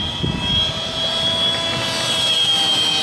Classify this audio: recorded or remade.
recorded